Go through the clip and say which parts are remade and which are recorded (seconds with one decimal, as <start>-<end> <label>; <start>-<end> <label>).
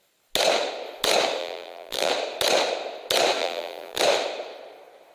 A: 0.0-1.4 recorded; 1.4-2.1 remade; 2.1-3.4 recorded; 3.4-4.0 remade; 4.0-5.1 recorded